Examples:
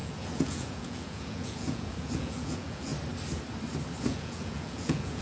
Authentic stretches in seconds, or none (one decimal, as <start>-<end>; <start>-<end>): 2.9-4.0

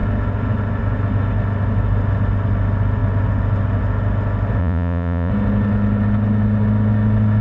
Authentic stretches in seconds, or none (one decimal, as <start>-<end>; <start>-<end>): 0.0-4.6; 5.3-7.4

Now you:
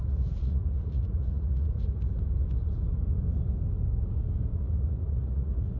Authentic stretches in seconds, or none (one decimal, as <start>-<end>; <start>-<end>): 2.2-4.5